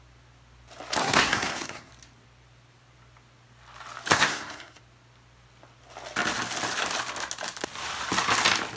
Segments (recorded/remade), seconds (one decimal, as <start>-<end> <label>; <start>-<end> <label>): 0.0-1.0 recorded; 1.0-1.9 remade; 1.9-4.1 recorded; 4.1-4.8 remade; 4.8-8.8 recorded

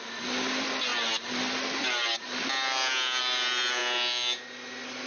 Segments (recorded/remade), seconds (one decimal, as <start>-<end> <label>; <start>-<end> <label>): 0.0-5.1 recorded

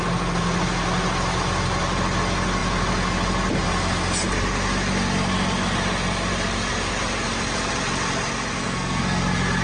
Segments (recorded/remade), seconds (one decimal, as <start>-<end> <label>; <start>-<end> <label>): 0.0-8.6 recorded; 8.6-9.2 remade; 9.2-9.6 recorded

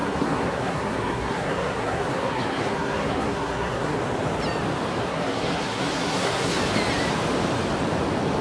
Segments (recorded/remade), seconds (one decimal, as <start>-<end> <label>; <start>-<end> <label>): 0.0-4.0 remade; 4.0-5.0 recorded; 5.0-6.6 remade; 6.6-8.4 recorded

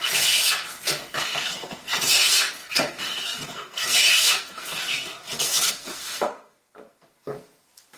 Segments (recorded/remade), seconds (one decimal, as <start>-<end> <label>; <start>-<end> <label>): 0.0-8.0 remade

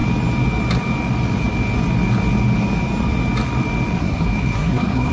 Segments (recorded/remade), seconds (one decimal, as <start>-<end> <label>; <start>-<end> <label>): 0.0-4.0 recorded; 4.0-5.1 remade